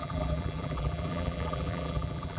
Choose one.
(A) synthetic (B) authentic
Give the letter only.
A